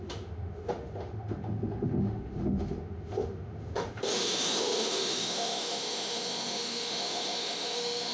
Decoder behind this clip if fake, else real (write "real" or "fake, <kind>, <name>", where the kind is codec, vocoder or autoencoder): fake, autoencoder, DAC-VAE